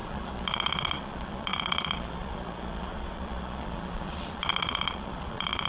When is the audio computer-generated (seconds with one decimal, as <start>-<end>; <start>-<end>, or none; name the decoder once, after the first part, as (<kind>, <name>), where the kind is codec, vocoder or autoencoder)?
0.0-5.7 (vocoder, Vocos)

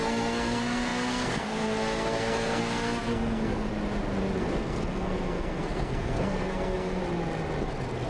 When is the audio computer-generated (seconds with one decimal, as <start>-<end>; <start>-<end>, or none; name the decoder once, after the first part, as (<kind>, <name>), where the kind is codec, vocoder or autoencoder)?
0.0-3.7 (codec, SNAC); 4.4-7.0

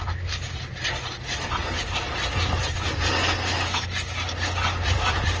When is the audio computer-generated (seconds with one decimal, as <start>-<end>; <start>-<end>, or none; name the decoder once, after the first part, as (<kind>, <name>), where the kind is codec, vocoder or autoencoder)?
none

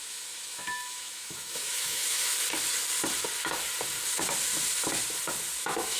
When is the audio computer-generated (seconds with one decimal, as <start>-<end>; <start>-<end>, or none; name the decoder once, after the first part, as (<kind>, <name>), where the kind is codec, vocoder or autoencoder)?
0.0-2.3 (autoencoder, DAC-VAE); 5.6-6.0

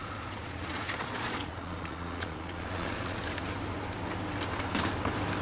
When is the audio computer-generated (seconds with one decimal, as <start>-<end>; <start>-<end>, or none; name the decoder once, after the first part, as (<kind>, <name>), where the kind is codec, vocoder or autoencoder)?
0.0-3.2 (vocoder, Vocos)